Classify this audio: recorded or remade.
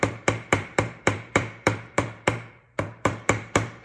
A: remade